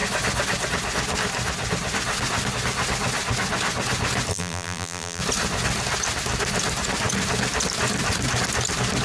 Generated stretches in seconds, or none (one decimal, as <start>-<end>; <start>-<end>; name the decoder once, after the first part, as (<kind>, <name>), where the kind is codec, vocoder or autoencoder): 4.3-5.2 (vocoder, BigVGAN v2)